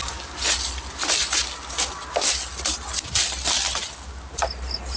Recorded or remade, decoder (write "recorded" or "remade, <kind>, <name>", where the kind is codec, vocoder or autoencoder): recorded